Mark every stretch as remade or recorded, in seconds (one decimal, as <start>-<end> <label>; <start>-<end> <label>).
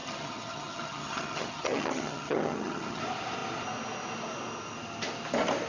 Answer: 0.0-3.0 remade; 3.0-5.7 recorded